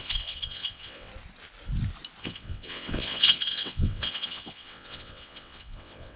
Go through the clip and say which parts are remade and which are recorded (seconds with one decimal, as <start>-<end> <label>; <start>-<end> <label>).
0.0-1.1 remade; 1.1-2.2 recorded; 2.2-6.2 remade